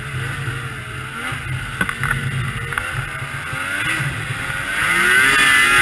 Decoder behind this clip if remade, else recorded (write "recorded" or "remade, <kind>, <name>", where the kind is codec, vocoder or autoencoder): recorded